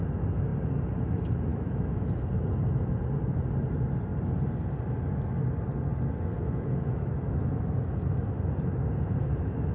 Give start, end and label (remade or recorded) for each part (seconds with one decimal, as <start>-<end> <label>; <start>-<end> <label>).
0.0-1.5 recorded; 1.5-2.3 remade; 2.3-6.3 recorded; 6.3-8.3 remade; 8.3-9.7 recorded